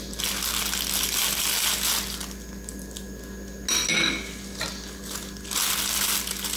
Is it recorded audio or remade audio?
recorded